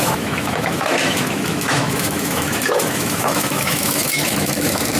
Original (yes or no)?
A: no